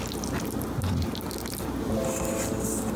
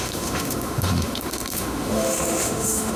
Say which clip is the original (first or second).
first